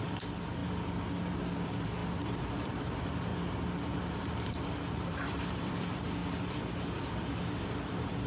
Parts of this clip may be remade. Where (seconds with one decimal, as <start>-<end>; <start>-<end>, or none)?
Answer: 0.0-0.6; 1.4-8.3